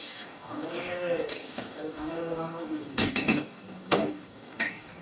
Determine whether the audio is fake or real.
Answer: fake